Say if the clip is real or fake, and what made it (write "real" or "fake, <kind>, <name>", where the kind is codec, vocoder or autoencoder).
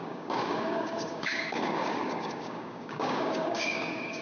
fake, codec, DAC